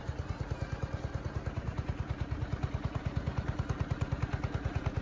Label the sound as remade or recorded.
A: remade